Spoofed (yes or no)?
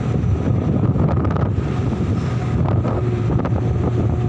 yes